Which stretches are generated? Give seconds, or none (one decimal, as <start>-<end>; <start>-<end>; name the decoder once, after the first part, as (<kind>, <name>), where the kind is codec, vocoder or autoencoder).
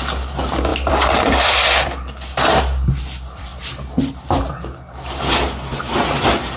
0.7-2.6 (vocoder, BigVGAN v2)